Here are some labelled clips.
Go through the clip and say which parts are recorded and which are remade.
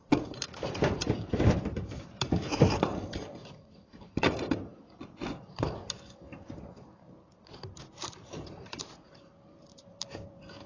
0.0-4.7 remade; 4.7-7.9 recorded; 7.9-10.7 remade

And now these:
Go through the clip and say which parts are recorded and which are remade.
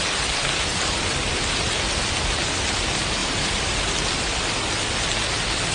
0.0-3.2 recorded; 3.2-3.9 remade; 3.9-5.7 recorded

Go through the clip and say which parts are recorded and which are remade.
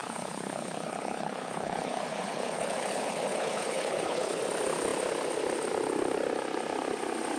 0.0-4.4 remade; 4.4-7.4 recorded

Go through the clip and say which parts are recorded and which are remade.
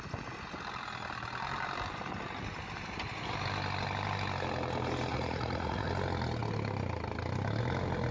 0.0-5.1 recorded; 5.1-5.9 remade; 5.9-8.1 recorded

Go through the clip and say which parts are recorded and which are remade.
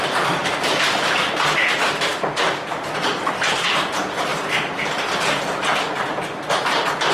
0.0-0.4 recorded; 0.4-2.1 remade; 2.1-7.1 recorded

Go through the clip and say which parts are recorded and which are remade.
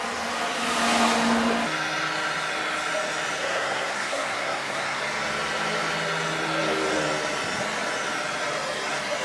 0.0-3.4 recorded; 3.4-5.0 remade; 5.0-9.2 recorded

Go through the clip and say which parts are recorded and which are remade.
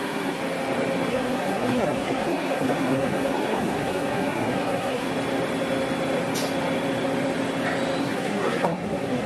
0.0-0.4 remade; 0.4-1.1 recorded; 1.1-5.1 remade; 5.1-8.0 recorded; 8.0-9.3 remade